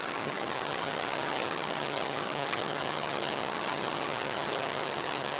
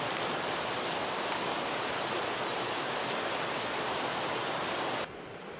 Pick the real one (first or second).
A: second